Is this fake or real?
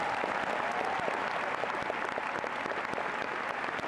real